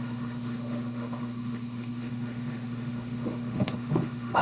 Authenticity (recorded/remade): remade